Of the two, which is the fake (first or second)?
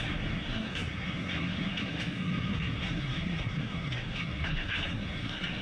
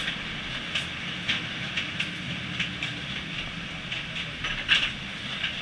first